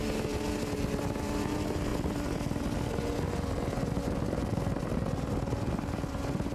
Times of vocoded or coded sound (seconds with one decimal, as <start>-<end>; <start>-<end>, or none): none